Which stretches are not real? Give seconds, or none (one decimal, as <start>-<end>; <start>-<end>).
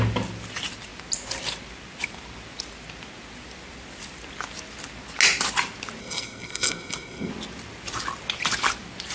6.0-7.3